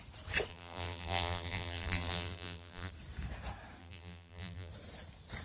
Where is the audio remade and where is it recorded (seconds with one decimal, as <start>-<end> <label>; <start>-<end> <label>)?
0.0-0.5 recorded; 0.5-2.9 remade; 2.9-3.8 recorded; 3.8-4.7 remade; 4.7-5.4 recorded